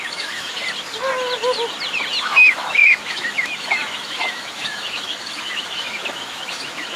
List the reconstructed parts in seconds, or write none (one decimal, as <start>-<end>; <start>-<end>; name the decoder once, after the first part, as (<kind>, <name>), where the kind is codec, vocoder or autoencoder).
0.0-0.6 (autoencoder, DAC-VAE); 2.2-7.0